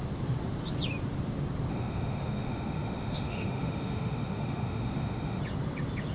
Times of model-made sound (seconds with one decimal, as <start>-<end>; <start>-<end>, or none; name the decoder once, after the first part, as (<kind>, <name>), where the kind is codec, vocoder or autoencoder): 1.7-5.4 (autoencoder, DAC-VAE)